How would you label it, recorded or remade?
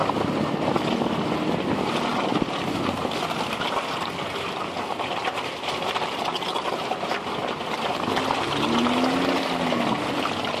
recorded